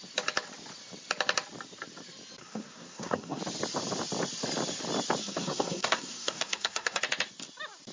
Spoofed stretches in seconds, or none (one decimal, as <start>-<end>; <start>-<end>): 2.4-3.4; 5.2-7.0